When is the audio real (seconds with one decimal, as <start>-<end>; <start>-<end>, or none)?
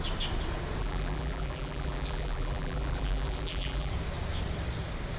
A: 0.0-0.8; 3.9-5.2